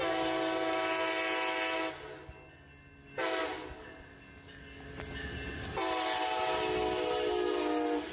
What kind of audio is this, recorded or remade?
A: recorded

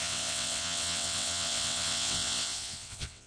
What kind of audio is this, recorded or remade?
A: remade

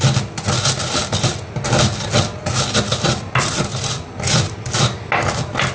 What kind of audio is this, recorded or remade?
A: recorded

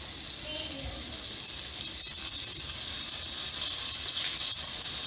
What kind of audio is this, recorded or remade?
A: recorded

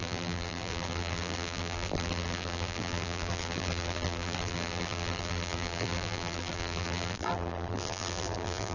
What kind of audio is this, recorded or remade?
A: remade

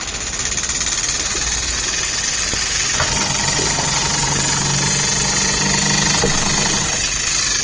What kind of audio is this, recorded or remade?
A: recorded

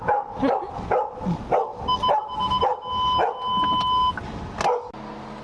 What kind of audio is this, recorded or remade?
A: recorded